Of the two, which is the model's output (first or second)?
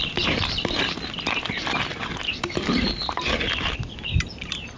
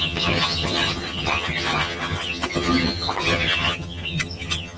second